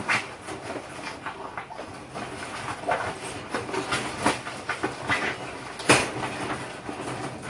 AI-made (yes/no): no